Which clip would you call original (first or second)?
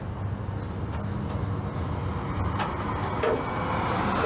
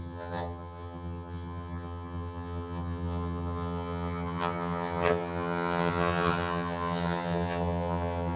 first